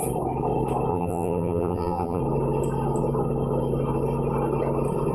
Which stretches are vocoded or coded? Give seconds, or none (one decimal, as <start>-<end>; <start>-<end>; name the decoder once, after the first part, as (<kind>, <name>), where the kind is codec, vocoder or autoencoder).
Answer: 0.9-2.2 (vocoder, BigVGAN v2)